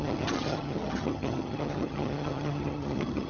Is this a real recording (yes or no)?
no